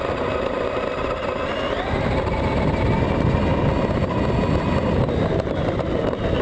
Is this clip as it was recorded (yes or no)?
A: yes